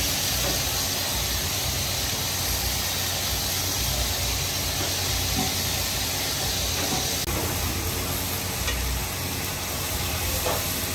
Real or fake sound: real